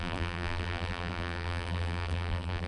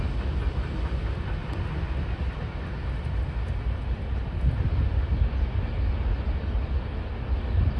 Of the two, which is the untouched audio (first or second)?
second